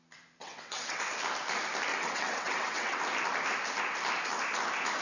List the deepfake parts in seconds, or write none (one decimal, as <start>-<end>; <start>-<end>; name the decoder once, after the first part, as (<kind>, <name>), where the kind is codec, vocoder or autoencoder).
0.4-1.0 (vocoder, WaveNeXt); 1.9-3.0